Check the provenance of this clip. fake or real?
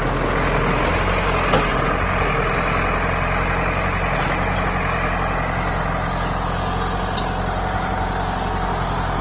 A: real